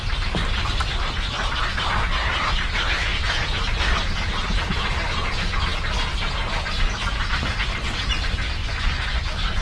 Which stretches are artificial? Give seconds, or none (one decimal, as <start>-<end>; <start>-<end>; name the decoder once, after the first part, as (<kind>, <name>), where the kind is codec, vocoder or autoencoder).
8.6-9.2 (vocoder, Vocos)